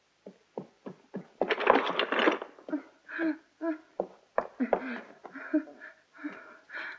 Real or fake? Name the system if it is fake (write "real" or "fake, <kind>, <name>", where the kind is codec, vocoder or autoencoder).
real